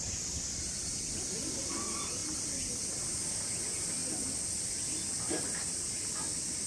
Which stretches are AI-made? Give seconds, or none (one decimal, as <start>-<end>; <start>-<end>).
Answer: none